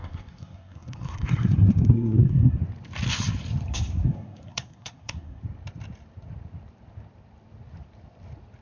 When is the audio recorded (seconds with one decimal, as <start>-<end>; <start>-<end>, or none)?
2.6-3.7; 5.4-8.6